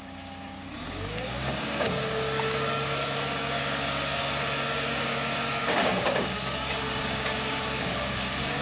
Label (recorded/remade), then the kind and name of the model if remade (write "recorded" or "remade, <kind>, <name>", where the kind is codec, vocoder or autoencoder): remade, codec, DAC